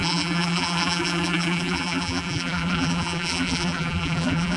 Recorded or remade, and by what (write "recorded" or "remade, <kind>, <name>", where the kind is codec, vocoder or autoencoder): remade, vocoder, BigVGAN v2